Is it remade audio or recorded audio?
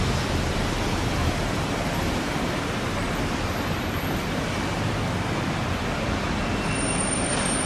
remade